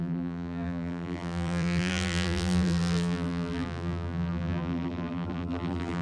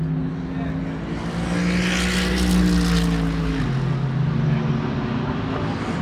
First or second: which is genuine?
second